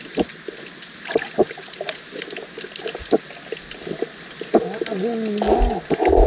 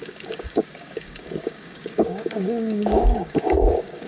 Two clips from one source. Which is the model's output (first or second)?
second